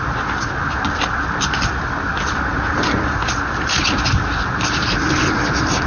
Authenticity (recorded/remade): recorded